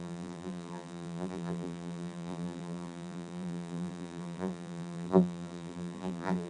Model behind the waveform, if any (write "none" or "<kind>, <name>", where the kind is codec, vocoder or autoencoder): vocoder, BigVGAN v2